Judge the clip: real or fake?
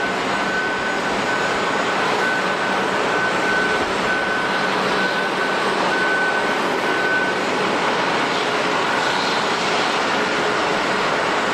real